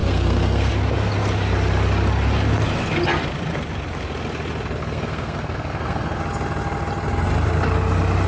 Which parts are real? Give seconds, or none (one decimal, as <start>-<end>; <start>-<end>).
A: 0.7-4.8; 6.2-8.3

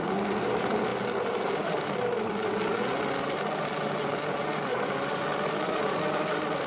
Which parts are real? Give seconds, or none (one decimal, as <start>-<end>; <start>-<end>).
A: 0.0-6.7

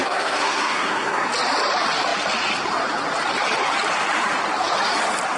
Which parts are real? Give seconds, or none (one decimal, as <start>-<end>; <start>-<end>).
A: 1.3-5.4